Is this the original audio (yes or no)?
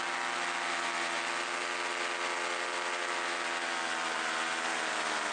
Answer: yes